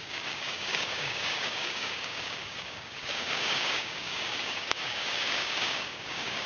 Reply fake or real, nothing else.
fake